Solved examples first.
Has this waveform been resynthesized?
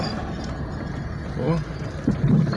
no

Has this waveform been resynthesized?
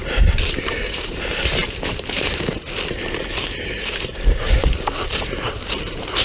yes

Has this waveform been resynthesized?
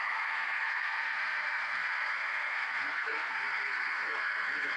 yes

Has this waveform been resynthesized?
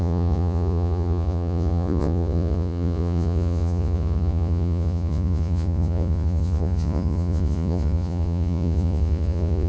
yes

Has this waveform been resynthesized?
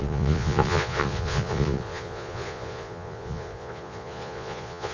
yes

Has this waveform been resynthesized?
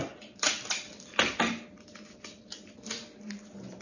no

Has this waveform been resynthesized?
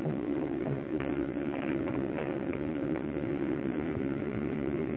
yes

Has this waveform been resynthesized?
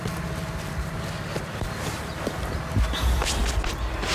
no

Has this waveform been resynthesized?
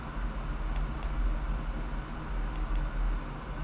no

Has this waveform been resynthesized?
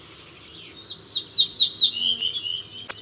no